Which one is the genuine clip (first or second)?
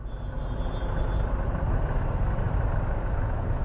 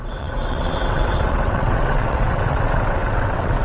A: first